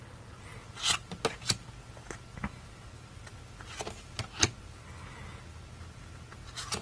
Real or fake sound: real